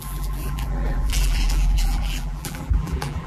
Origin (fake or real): fake